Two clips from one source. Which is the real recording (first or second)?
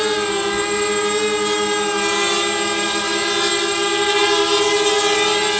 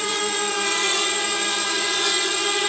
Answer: first